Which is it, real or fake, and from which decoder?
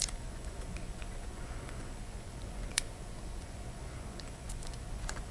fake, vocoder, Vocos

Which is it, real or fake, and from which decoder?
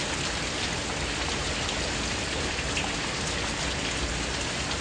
real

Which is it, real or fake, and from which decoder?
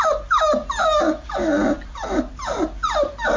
real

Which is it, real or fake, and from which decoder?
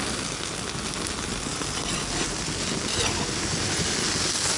real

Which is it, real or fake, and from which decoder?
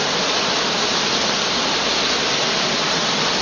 real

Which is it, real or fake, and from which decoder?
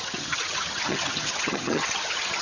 fake, vocoder, HiFi-GAN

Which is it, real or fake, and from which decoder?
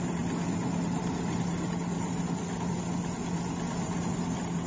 real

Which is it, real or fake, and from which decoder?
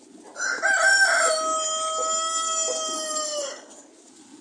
real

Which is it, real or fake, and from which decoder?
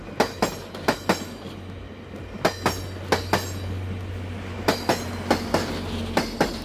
real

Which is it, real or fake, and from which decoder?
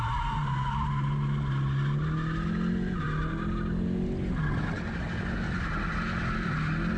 real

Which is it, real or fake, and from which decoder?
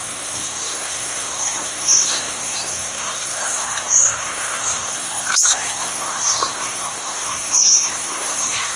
fake, codec, SNAC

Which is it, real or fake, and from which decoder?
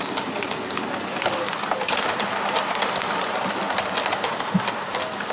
real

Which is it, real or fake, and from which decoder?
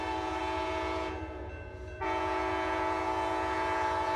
fake, vocoder, Vocos